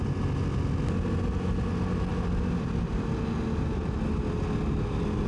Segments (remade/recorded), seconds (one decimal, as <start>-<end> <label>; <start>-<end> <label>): 0.0-2.1 recorded; 2.1-3.2 remade; 3.2-5.3 recorded